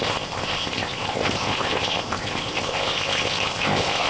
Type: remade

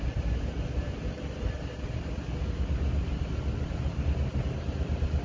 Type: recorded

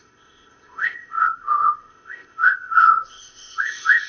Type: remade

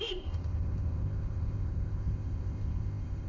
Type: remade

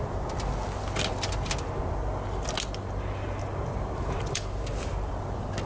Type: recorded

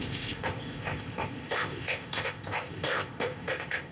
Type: remade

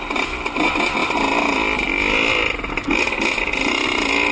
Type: recorded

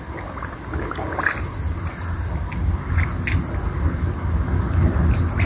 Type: recorded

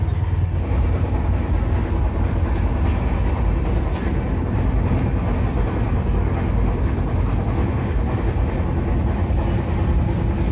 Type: recorded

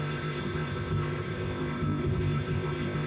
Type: remade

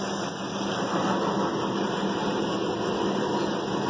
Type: recorded